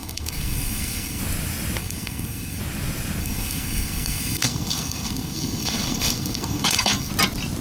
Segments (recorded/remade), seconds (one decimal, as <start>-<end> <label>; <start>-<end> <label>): 0.0-1.2 remade; 1.2-1.8 recorded; 1.8-2.6 remade; 2.6-3.2 recorded; 3.2-7.1 remade; 7.1-7.6 recorded